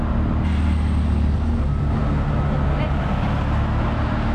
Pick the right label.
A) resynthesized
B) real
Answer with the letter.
B